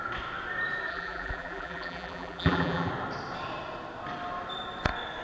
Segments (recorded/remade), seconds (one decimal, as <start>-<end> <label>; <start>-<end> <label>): 0.0-0.9 recorded; 0.9-2.9 remade; 2.9-5.2 recorded